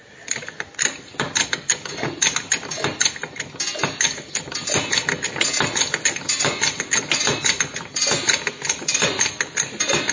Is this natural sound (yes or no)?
yes